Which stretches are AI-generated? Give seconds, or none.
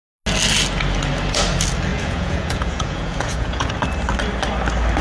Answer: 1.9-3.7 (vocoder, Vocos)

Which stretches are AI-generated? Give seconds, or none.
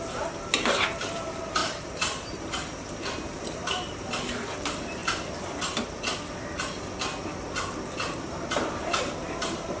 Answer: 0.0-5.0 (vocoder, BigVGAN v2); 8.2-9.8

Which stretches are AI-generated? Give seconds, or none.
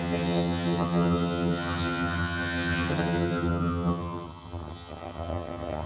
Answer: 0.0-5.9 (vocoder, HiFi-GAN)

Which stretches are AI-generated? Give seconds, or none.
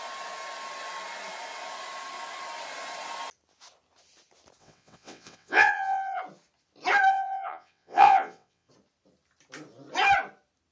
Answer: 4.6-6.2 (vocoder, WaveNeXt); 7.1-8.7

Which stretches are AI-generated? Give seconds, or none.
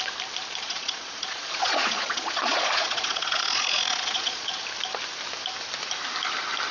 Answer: 0.6-4.6 (vocoder, Vocos)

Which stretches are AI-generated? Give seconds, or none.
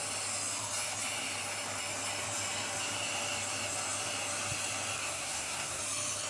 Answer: 5.0-5.8 (codec, SNAC)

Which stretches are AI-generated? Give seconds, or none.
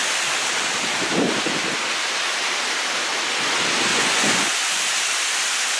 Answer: 3.9-4.8 (vocoder, Vocos)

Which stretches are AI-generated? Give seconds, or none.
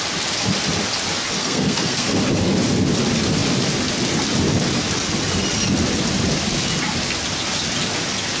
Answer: 1.4-2.2 (codec, SNAC)